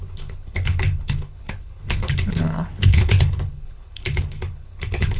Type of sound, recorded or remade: remade